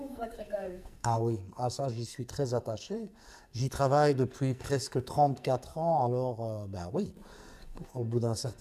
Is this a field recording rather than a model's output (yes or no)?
no